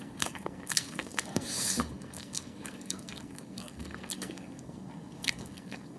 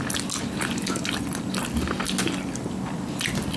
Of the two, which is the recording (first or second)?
second